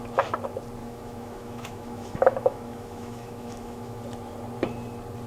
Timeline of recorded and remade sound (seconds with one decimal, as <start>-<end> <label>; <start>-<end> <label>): 0.0-0.8 recorded; 0.8-4.0 remade; 4.0-5.3 recorded